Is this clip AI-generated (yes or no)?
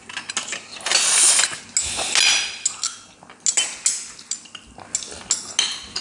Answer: no